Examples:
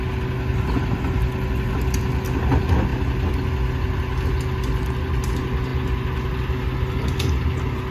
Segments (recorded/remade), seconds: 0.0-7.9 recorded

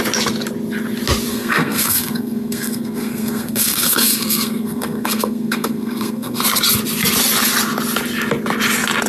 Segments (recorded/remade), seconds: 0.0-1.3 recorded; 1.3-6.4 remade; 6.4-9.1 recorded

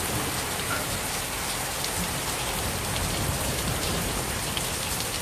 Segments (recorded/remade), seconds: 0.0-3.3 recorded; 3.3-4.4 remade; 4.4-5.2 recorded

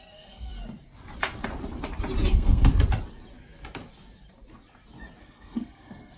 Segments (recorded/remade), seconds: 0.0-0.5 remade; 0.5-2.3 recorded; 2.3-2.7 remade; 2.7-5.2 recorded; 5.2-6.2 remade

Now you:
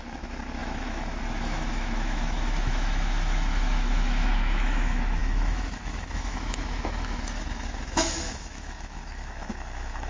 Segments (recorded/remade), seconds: 0.0-10.1 remade